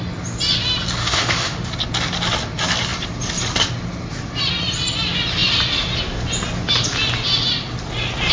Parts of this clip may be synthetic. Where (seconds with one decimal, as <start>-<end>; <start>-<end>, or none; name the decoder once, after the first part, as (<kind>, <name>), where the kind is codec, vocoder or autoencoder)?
1.0-1.7 (autoencoder, DAC-VAE)